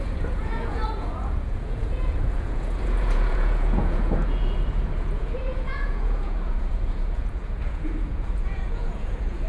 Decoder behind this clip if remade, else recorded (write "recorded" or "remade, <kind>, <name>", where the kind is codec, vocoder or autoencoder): remade, vocoder, Vocos